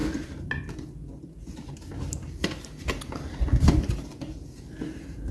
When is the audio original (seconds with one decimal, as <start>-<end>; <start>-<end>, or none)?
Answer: 0.0-5.3